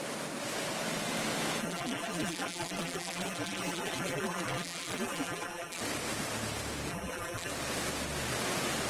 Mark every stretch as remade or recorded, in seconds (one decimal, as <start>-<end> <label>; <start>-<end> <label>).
0.0-1.6 recorded; 1.6-5.8 remade; 5.8-6.9 recorded; 6.9-7.5 remade; 7.5-8.9 recorded